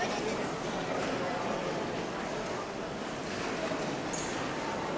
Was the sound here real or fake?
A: real